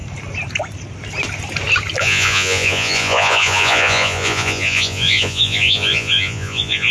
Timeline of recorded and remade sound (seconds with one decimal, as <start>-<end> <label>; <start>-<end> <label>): 0.0-2.0 recorded; 2.0-6.9 remade